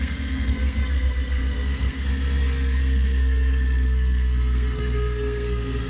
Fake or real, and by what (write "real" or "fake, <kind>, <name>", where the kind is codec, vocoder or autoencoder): fake, codec, SNAC